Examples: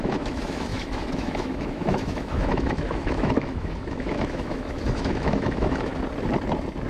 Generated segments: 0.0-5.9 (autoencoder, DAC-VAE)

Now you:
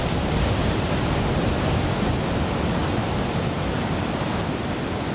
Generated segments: none

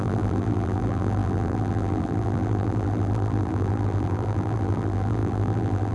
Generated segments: 0.0-5.9 (vocoder, BigVGAN v2)

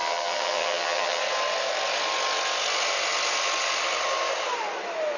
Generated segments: 0.0-1.2 (vocoder, HiFi-GAN)

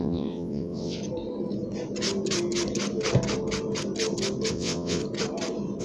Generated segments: 0.0-1.0 (vocoder, WaveNeXt); 4.5-5.0